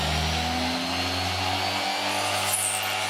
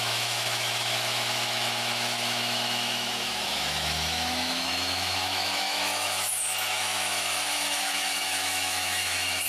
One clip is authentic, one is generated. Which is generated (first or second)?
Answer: second